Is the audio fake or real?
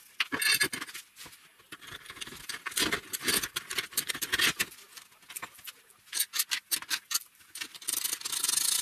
real